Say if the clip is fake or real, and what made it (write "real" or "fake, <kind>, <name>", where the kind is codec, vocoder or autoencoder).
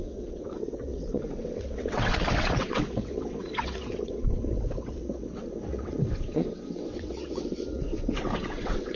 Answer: fake, vocoder, WaveNeXt